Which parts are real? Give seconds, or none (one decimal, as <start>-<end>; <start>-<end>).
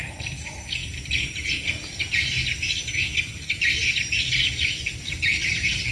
0.0-5.9